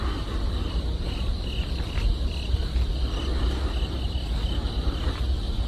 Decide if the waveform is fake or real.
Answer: real